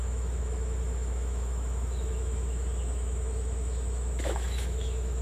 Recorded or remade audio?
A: remade